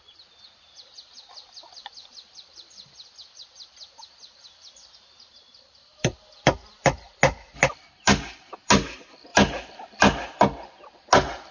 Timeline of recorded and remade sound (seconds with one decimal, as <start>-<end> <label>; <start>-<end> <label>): 0.0-5.9 recorded; 5.9-6.9 remade; 6.9-9.3 recorded; 9.3-11.1 remade; 11.1-11.5 recorded